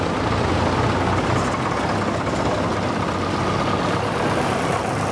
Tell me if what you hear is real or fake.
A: real